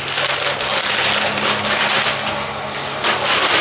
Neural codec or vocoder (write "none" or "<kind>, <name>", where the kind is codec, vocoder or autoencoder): none